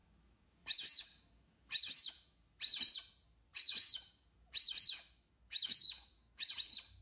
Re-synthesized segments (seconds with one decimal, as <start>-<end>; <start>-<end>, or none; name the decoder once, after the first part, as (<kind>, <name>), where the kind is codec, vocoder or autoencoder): 0.0-2.6 (autoencoder, DAC-VAE); 3.5-6.5